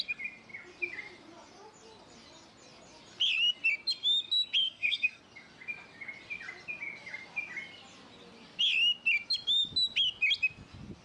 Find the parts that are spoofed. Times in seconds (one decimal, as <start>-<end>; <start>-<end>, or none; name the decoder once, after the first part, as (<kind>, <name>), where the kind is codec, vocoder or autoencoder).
4.6-5.2 (codec, SNAC)